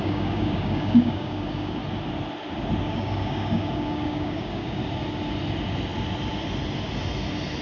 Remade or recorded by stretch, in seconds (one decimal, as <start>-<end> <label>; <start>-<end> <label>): 0.0-1.8 remade; 1.8-2.8 recorded; 2.8-4.8 remade; 4.8-7.6 recorded